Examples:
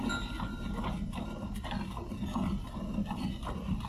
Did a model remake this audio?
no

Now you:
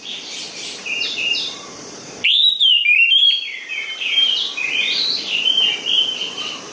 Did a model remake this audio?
yes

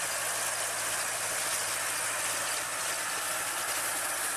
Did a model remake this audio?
no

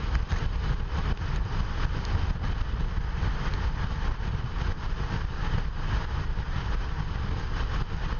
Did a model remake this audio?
yes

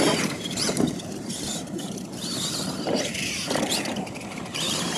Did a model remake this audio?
yes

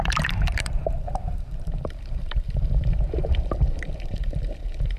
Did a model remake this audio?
yes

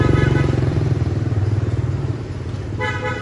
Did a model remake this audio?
yes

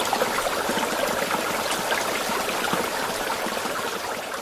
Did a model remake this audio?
no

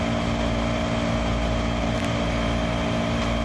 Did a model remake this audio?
no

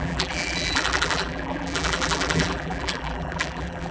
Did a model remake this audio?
yes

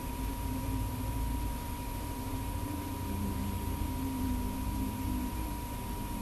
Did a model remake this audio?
yes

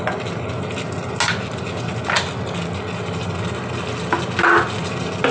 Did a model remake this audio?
no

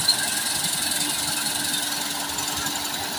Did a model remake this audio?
no